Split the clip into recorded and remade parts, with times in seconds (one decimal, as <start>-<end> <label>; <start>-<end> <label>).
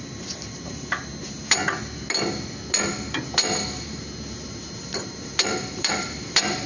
0.0-1.1 remade; 1.1-4.9 recorded; 4.9-6.7 remade